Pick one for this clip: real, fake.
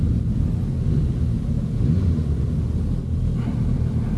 real